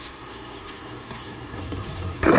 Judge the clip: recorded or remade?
remade